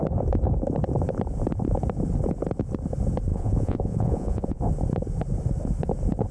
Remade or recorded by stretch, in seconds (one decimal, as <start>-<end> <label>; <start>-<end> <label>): 0.0-3.3 recorded; 3.3-4.6 remade; 4.6-6.3 recorded